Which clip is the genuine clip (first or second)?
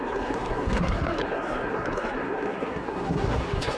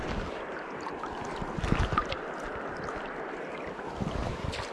second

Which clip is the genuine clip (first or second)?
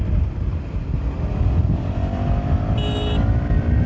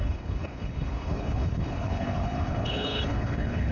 first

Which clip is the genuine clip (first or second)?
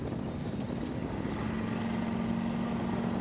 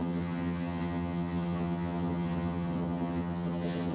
first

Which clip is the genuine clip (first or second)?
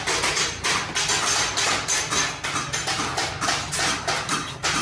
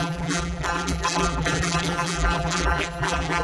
first